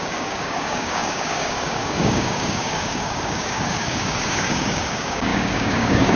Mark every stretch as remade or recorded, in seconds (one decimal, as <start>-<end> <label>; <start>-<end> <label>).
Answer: 0.0-6.2 remade